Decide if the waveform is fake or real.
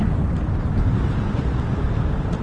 real